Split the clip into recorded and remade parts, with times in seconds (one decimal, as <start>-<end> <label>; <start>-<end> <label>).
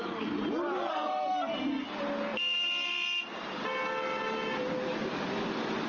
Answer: 0.0-0.9 recorded; 0.9-1.5 remade; 1.5-5.9 recorded